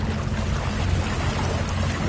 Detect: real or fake real